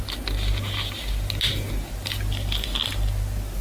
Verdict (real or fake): real